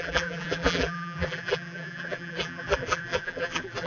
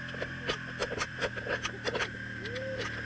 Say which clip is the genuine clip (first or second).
second